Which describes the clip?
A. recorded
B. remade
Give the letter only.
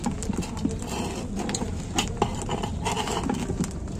A